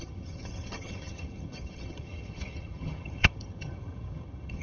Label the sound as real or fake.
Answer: fake